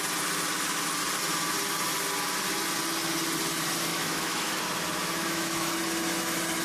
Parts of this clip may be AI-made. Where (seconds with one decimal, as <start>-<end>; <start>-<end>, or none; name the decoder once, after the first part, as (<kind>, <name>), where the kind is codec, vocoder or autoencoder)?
3.9-4.6 (autoencoder, DAC-VAE); 5.0-5.7